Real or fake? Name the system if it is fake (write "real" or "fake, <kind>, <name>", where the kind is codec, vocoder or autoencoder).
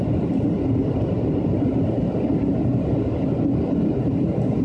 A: real